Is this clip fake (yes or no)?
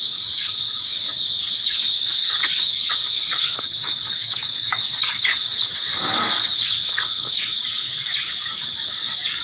yes